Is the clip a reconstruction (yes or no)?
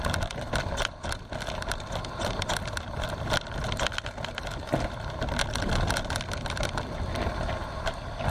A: no